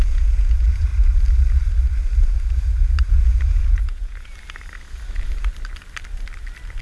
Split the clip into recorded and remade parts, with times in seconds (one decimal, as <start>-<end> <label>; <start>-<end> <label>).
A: 0.0-0.9 remade; 0.9-3.1 recorded; 3.1-4.3 remade; 4.3-6.8 recorded